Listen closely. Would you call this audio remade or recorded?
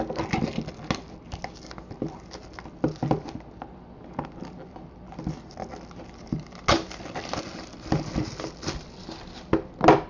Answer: recorded